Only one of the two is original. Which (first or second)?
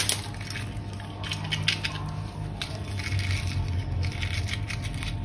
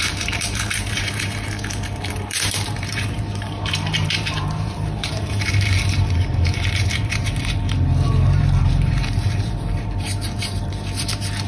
first